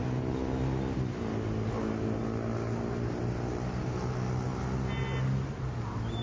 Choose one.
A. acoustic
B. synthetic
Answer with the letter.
A